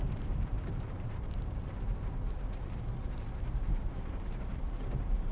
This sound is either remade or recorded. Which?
remade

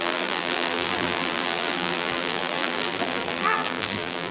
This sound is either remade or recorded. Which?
remade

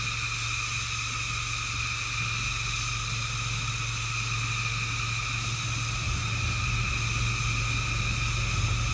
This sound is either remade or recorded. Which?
recorded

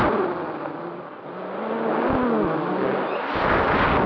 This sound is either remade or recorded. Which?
recorded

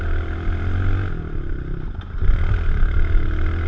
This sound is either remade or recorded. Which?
recorded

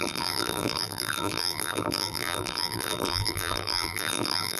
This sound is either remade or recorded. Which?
remade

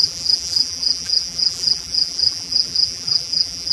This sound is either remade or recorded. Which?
remade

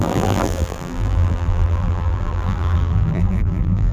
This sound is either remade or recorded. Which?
remade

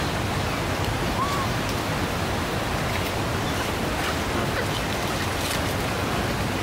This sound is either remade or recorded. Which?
recorded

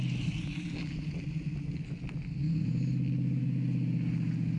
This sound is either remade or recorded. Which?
recorded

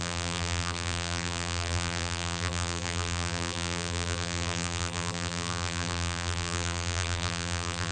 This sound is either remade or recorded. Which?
remade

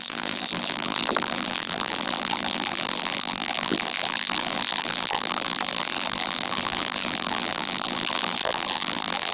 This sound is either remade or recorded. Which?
remade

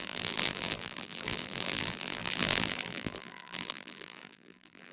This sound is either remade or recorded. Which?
remade